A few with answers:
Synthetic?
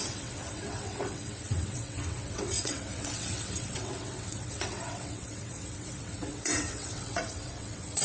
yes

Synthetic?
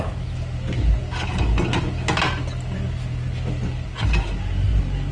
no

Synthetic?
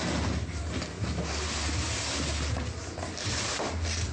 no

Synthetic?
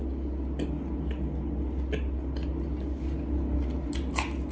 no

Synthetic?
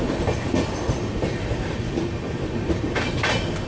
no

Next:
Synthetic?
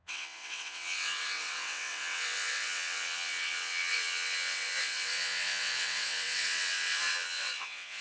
yes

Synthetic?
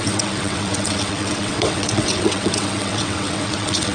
yes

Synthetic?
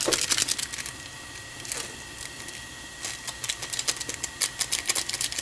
no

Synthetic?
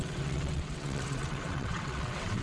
yes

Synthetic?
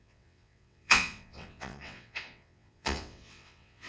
yes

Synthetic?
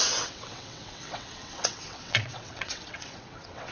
yes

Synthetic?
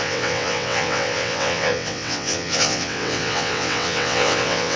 yes